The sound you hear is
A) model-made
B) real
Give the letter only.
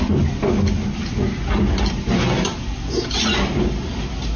B